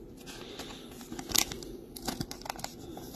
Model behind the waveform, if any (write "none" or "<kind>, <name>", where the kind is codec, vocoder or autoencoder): none